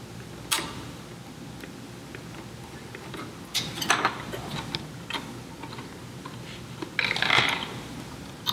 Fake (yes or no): no